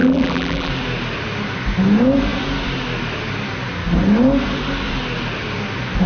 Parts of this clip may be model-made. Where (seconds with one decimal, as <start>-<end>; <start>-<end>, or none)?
0.0-0.7